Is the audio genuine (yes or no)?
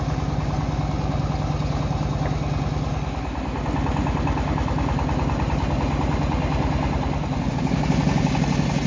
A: yes